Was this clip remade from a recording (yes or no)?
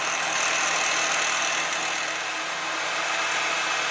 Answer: no